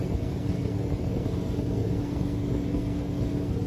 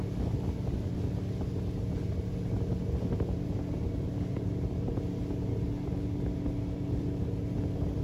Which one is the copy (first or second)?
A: first